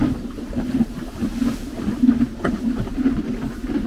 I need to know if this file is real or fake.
real